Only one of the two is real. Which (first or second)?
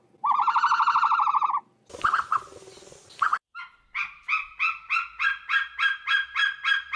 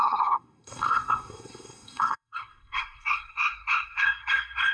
first